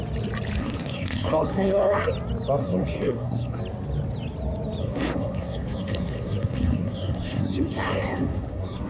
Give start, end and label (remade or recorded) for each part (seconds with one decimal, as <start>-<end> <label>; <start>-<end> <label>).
0.0-0.6 recorded; 0.6-2.1 remade; 2.1-2.6 recorded; 2.6-3.6 remade; 3.6-4.8 recorded; 4.8-8.9 remade